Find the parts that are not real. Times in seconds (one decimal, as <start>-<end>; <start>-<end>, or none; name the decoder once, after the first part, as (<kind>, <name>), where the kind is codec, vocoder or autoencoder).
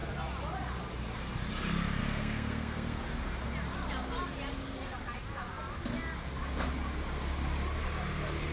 2.0-3.0 (codec, SNAC)